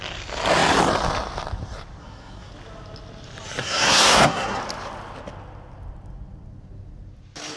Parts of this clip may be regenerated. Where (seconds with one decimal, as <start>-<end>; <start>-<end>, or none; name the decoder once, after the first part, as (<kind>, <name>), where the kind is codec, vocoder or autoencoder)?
2.0-2.5 (codec, SNAC); 3.6-4.6